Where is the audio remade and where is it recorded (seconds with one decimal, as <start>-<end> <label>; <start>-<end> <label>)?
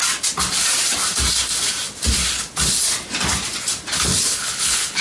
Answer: 0.0-4.1 recorded; 4.1-5.0 remade